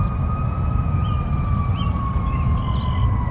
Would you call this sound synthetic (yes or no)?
no